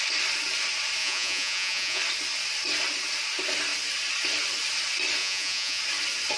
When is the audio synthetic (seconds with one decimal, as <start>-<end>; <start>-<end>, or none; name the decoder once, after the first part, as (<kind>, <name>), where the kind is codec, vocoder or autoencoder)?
1.0-2.0 (vocoder, Vocos); 5.2-5.8